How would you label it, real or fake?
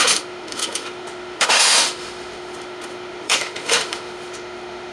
fake